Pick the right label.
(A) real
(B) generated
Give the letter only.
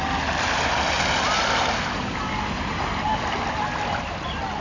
A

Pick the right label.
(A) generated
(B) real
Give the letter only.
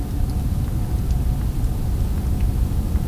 B